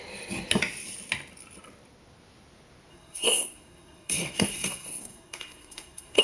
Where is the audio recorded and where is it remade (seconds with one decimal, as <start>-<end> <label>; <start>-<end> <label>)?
0.0-2.9 recorded; 2.9-6.2 remade